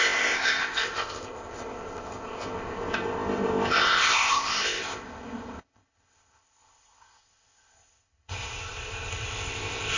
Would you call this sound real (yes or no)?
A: no